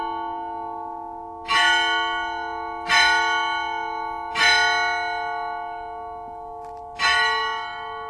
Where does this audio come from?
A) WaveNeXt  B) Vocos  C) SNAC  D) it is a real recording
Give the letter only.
D